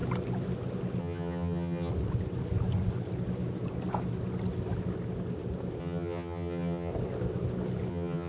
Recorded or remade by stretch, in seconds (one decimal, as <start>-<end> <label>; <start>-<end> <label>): 0.0-1.0 recorded; 1.0-1.9 remade; 1.9-5.8 recorded; 5.8-6.9 remade; 6.9-7.9 recorded; 7.9-8.3 remade